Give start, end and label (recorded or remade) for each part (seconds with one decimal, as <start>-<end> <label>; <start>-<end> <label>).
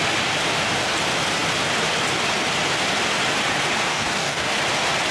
0.0-3.9 recorded; 3.9-4.5 remade; 4.5-5.1 recorded